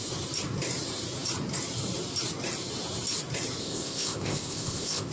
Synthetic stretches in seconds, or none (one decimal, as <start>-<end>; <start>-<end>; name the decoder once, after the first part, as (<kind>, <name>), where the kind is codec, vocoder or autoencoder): 3.6-5.1 (codec, ZipCodec)